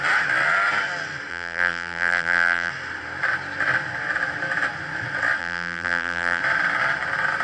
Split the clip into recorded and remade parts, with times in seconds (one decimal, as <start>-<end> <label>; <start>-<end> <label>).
0.0-1.3 recorded; 1.3-2.7 remade; 2.7-5.4 recorded; 5.4-6.4 remade; 6.4-7.4 recorded